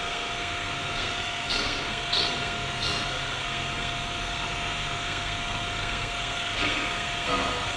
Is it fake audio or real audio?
fake